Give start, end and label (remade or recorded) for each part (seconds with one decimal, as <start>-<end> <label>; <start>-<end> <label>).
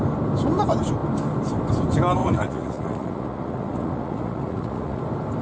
0.0-2.2 recorded; 2.2-5.0 remade; 5.0-5.4 recorded